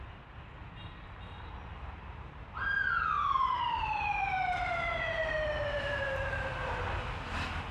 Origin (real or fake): real